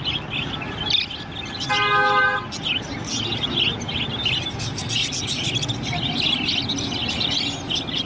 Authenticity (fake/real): real